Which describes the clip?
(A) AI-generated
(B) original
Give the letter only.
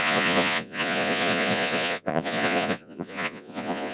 A